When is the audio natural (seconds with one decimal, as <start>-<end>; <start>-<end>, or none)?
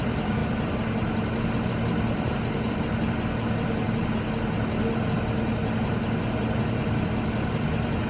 0.0-8.1